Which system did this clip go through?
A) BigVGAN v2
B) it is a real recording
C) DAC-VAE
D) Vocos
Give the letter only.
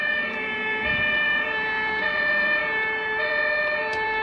A